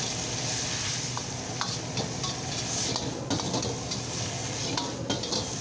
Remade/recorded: recorded